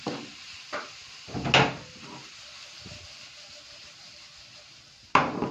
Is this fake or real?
real